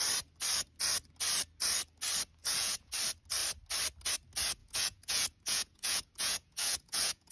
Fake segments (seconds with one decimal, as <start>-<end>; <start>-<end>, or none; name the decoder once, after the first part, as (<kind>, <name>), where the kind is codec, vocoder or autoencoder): 2.4-2.9 (vocoder, Vocos); 4.6-7.3